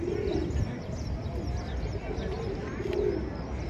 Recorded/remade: recorded